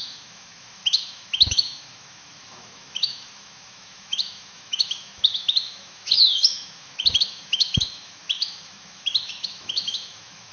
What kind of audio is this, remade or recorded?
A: remade